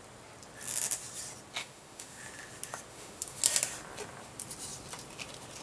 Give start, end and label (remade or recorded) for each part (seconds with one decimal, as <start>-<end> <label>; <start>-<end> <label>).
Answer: 0.0-1.6 recorded; 1.6-2.2 remade; 2.2-2.9 recorded; 2.9-3.4 remade; 3.4-5.6 recorded